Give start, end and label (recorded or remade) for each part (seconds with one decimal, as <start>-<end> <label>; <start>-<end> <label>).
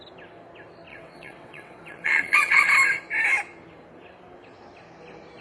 0.0-0.9 recorded; 0.9-2.7 remade; 2.7-5.4 recorded